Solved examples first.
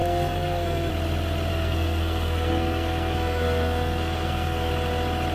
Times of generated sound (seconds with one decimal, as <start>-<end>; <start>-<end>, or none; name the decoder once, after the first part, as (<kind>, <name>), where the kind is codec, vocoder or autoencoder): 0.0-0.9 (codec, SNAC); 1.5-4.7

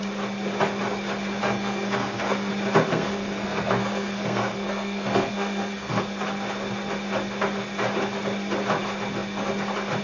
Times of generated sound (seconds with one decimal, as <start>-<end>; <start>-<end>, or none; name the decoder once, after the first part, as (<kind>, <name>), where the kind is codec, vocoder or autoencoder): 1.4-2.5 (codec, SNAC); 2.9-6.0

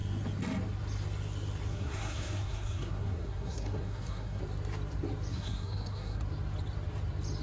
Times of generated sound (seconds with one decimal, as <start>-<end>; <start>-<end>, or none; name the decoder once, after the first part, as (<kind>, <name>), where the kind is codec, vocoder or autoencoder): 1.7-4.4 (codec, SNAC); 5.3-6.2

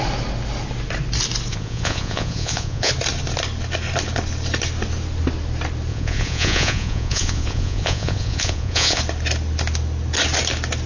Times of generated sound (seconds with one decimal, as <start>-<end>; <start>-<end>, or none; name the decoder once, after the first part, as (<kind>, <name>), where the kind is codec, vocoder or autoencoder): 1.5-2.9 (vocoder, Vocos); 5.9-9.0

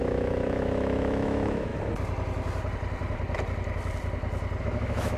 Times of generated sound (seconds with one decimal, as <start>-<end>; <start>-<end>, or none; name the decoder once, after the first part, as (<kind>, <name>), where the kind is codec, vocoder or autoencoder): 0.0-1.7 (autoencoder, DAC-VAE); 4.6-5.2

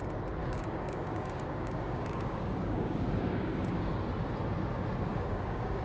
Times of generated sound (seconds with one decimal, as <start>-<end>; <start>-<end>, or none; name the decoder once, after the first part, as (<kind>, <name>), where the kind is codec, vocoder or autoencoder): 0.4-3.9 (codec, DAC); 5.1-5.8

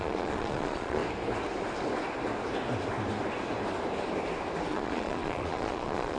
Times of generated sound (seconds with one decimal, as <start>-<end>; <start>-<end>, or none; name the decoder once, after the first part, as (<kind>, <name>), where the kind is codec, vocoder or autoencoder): 0.0-1.0 (vocoder, Vocos); 4.7-6.2